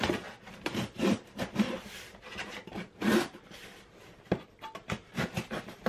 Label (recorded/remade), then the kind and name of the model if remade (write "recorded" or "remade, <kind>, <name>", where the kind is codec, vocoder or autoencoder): remade, vocoder, BigVGAN v2